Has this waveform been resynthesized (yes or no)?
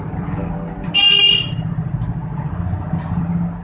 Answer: no